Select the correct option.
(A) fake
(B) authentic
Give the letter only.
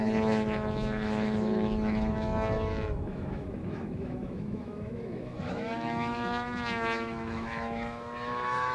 A